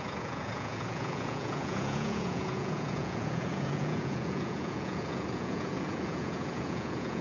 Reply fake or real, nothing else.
fake